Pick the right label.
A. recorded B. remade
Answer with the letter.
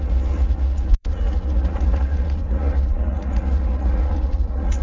B